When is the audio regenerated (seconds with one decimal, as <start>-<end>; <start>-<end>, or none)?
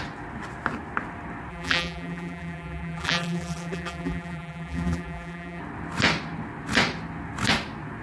1.5-5.6